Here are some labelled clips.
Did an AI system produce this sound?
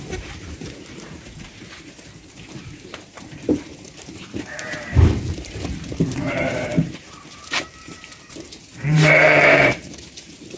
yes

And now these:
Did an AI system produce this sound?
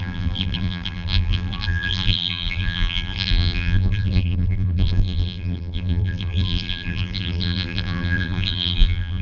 yes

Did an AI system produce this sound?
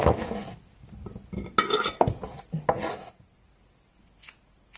no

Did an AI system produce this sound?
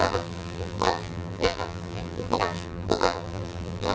yes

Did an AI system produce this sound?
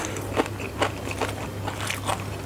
no